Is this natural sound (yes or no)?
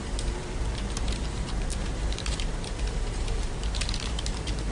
no